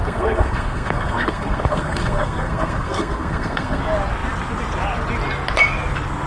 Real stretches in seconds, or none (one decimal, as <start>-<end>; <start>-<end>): 3.8-6.3